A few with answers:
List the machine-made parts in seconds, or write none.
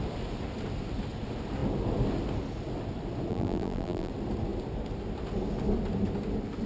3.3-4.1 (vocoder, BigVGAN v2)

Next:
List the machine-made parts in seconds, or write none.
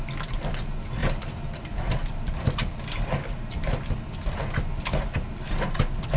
1.0-2.8 (vocoder, BigVGAN v2)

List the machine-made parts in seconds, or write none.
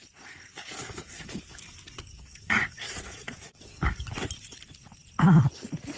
0.5-4.1 (codec, DAC)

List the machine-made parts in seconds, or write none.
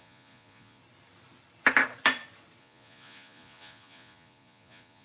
0.0-0.8 (vocoder, Vocos); 2.6-5.0